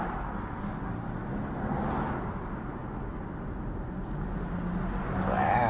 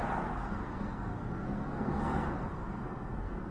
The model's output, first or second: second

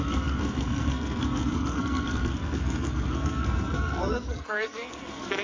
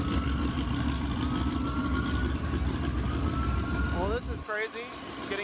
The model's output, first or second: first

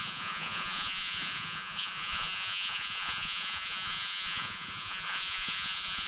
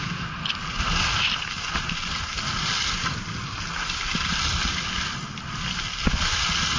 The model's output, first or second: first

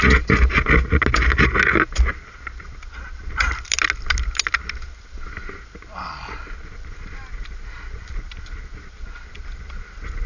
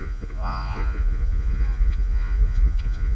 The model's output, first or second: second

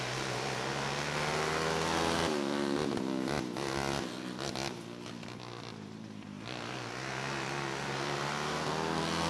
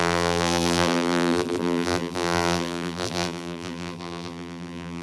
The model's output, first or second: second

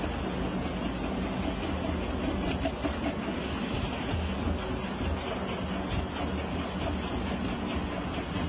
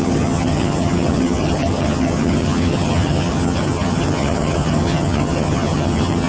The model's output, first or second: second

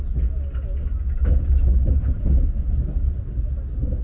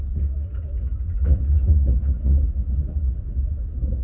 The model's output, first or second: second